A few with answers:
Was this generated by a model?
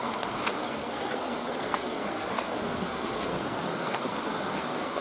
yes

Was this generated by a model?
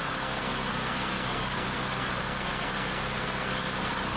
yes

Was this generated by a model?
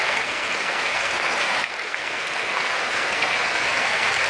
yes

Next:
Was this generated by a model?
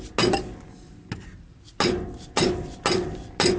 no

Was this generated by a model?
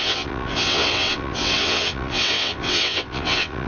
yes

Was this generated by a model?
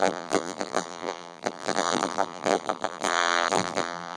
yes